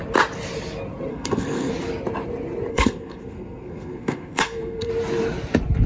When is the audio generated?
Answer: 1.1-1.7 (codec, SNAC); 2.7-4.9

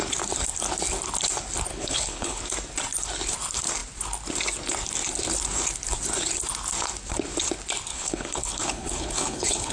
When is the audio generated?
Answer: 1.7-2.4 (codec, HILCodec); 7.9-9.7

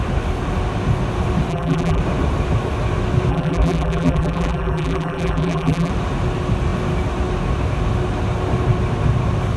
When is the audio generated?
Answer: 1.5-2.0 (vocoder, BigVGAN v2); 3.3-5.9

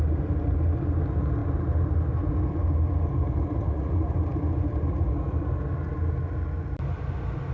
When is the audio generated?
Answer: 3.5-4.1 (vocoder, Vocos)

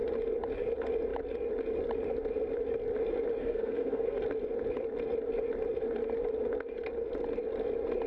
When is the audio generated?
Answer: 3.4-4.2 (codec, SNAC)

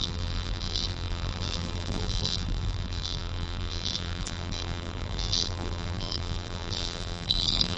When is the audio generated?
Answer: 0.0-7.8 (vocoder, BigVGAN v2)